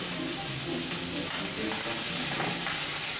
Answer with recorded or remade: recorded